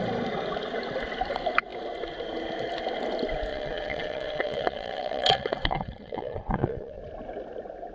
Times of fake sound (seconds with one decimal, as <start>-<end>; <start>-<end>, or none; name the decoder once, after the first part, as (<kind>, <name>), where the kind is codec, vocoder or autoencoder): 3.5-7.0 (vocoder, WaveNeXt)